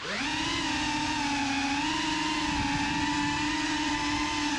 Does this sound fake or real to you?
real